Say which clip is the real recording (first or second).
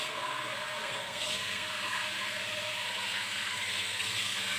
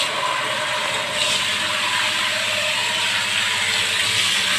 second